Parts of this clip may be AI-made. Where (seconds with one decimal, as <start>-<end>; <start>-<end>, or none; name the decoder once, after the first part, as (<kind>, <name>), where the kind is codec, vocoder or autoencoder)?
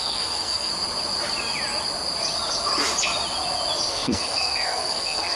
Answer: 0.0-0.7 (codec, SNAC); 3.9-5.4